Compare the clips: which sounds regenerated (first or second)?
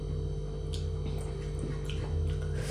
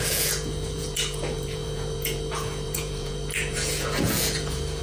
second